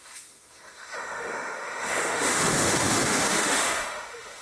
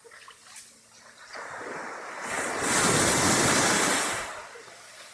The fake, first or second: first